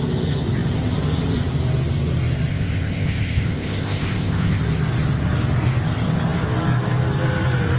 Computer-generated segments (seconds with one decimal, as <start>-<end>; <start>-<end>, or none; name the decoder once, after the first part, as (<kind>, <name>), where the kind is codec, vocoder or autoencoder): 2.5-4.6 (codec, ZipCodec)